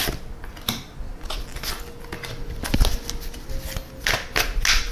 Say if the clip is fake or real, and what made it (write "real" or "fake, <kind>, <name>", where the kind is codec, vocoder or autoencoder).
real